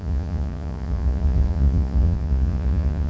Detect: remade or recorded remade